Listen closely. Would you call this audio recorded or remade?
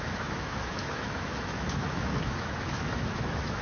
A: remade